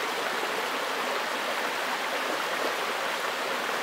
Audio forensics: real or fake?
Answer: real